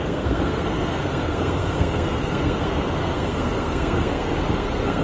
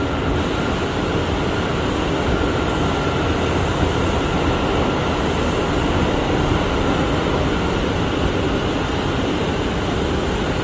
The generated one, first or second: first